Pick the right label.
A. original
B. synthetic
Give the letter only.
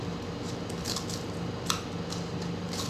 A